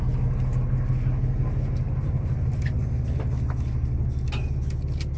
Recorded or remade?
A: recorded